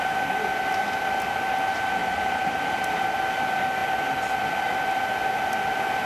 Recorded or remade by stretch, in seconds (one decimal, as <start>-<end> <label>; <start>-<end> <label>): 0.0-2.0 recorded; 2.0-3.2 remade; 3.2-6.1 recorded